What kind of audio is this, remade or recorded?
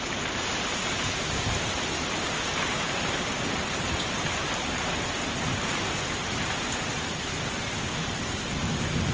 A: remade